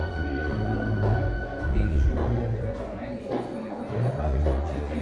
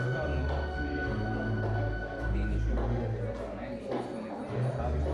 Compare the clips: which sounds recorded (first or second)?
second